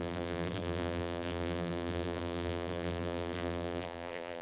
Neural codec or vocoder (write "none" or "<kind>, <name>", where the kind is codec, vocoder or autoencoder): vocoder, BigVGAN v2